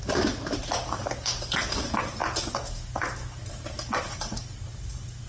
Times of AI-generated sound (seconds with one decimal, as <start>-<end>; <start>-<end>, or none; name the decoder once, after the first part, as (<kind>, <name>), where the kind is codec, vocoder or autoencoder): none